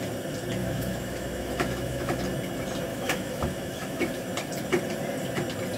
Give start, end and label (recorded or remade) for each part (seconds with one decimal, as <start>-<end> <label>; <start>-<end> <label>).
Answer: 0.0-0.6 recorded; 0.6-2.2 remade; 2.2-2.9 recorded; 2.9-4.1 remade; 4.1-5.8 recorded